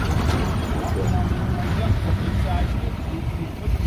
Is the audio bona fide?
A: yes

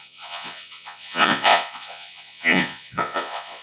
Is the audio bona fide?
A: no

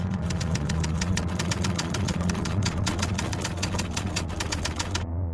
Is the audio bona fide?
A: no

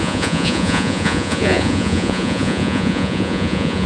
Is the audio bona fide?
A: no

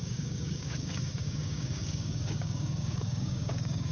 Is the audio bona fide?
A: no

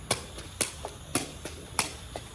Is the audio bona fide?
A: yes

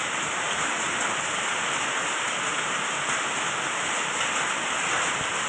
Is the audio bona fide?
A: yes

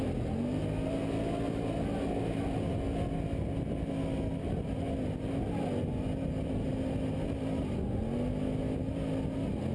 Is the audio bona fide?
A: yes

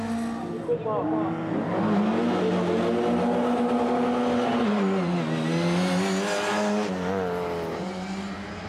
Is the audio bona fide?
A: yes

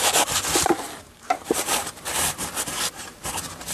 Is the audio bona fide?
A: no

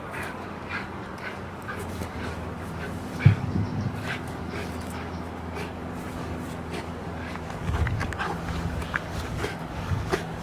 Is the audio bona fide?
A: no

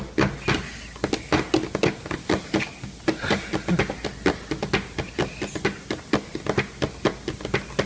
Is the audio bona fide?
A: yes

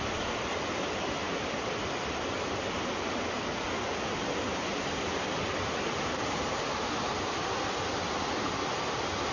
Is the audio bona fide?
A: yes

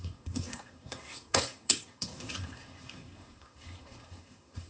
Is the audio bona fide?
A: no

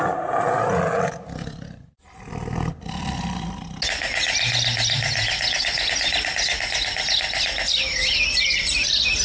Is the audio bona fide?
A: yes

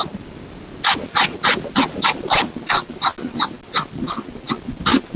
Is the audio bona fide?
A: yes